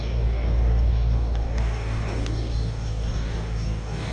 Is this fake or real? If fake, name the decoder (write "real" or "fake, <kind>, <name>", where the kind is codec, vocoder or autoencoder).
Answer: fake, codec, DAC